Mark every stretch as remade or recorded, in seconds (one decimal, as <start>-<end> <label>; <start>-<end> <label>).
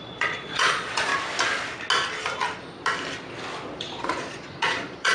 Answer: 0.0-1.1 remade; 1.1-3.8 recorded; 3.8-5.1 remade